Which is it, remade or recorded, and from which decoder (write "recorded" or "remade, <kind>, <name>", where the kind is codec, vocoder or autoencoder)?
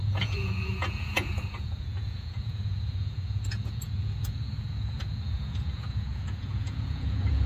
remade, vocoder, Vocos